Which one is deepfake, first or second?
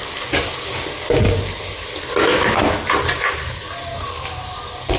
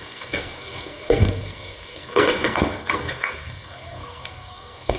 second